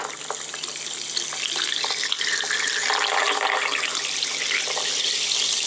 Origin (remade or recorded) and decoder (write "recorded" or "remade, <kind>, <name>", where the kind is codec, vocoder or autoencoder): recorded